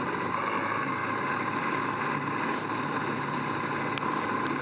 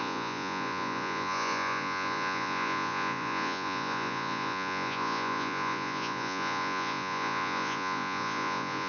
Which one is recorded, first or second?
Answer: first